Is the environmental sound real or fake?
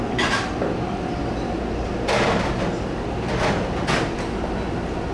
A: real